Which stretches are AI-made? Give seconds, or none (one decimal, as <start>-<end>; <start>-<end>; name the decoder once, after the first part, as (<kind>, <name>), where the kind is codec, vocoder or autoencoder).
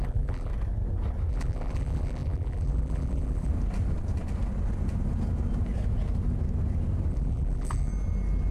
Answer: 0.0-0.5 (vocoder, BigVGAN v2); 1.3-3.5; 7.1-7.9